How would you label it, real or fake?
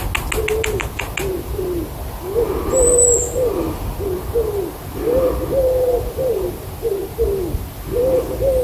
real